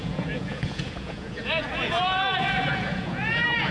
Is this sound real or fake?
fake